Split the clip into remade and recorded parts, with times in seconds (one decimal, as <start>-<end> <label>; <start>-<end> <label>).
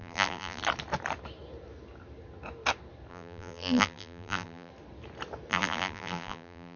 0.0-0.6 remade; 0.6-3.1 recorded; 3.1-4.7 remade; 4.7-5.5 recorded; 5.5-6.8 remade